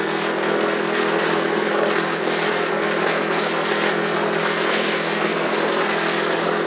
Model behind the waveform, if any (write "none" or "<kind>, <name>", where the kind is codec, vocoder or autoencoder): codec, SNAC